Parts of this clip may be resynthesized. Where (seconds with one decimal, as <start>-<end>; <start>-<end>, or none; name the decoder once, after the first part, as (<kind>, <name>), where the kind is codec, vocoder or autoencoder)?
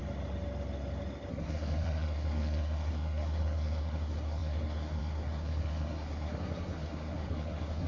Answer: 1.3-7.9 (codec, SNAC)